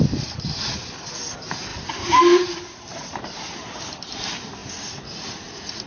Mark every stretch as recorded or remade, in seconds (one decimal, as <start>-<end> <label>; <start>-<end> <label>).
0.0-1.7 recorded; 1.7-3.8 remade; 3.8-5.9 recorded